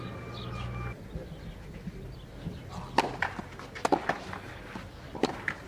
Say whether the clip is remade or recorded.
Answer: recorded